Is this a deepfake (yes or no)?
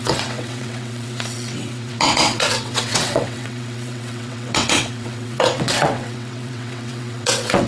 yes